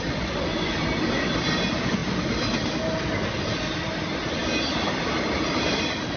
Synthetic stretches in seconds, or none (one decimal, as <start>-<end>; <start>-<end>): none